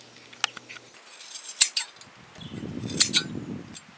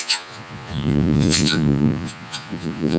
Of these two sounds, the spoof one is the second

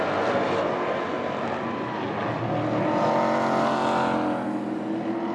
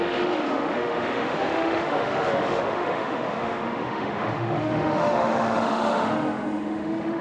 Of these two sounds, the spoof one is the second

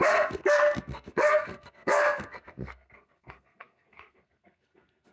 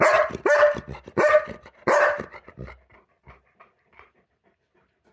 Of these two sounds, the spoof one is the first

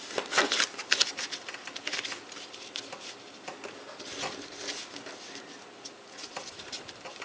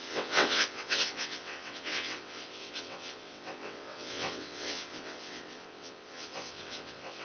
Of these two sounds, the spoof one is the second